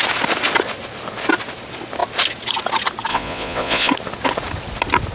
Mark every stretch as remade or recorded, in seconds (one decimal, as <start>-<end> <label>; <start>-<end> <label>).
0.0-3.1 recorded; 3.1-3.9 remade; 3.9-5.1 recorded